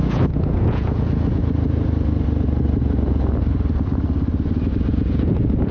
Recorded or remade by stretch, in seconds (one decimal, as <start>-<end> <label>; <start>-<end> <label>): 0.0-1.4 remade; 1.4-4.8 recorded; 4.8-5.7 remade